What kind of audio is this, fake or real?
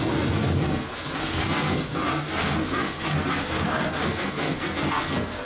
fake